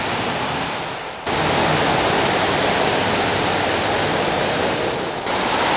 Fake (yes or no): no